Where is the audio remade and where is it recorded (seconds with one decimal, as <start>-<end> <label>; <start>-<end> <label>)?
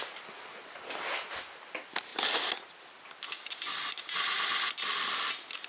0.0-5.7 recorded